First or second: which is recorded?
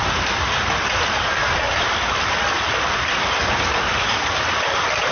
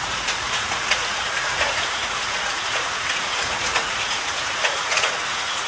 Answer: first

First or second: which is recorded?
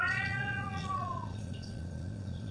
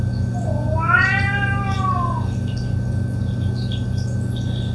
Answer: second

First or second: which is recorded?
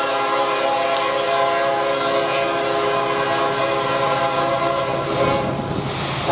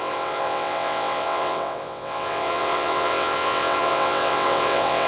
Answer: first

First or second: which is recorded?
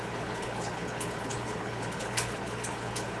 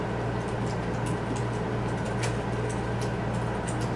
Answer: second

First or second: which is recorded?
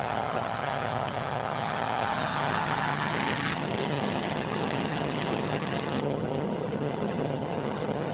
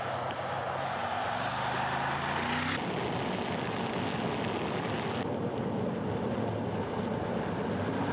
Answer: second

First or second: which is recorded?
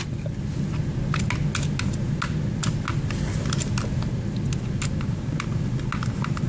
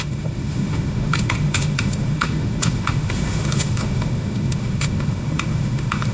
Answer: first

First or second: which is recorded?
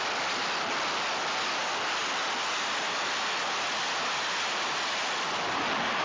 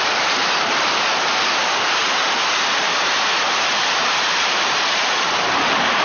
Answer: first